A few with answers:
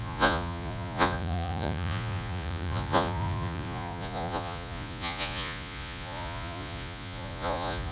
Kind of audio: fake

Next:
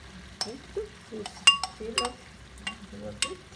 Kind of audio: real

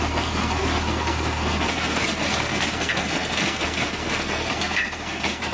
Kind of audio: fake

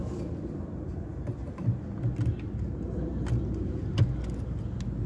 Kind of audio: real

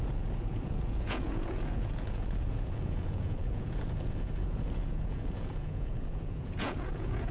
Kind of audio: fake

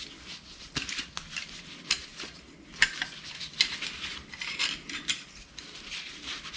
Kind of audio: real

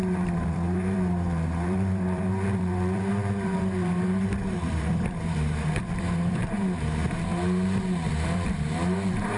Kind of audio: fake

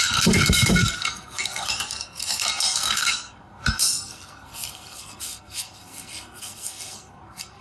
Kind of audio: fake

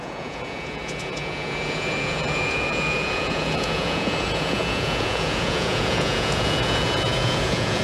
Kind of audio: fake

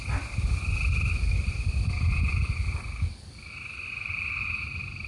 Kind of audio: real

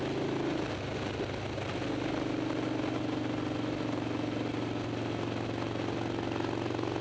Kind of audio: real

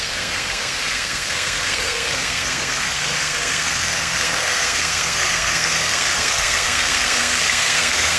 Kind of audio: fake